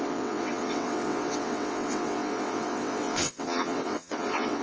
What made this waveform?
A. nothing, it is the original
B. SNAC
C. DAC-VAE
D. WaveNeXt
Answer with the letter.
D